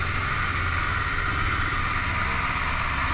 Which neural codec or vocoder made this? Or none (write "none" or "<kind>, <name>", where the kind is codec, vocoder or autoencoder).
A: none